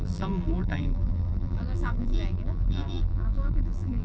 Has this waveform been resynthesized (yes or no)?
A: yes